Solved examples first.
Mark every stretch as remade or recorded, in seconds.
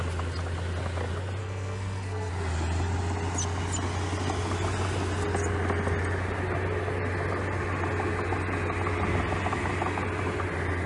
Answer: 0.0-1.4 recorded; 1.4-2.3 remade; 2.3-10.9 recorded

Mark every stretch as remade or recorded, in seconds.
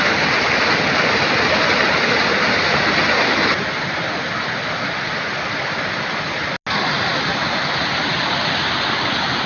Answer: 0.0-9.5 recorded